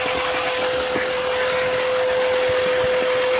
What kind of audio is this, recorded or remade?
recorded